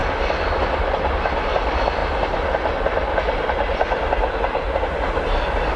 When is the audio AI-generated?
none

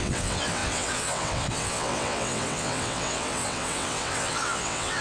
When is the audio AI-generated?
0.0-5.0 (vocoder, WaveNeXt)

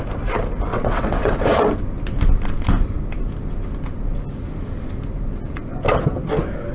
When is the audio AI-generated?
0.7-1.3 (vocoder, WaveNeXt)

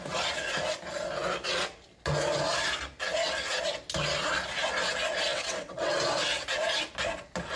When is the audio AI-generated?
5.3-5.9 (vocoder, WaveNeXt)

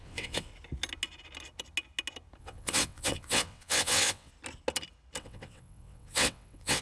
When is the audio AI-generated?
0.0-0.5 (vocoder, WaveNeXt); 2.4-4.3; 5.2-6.8